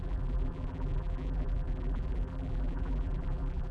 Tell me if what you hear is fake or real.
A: fake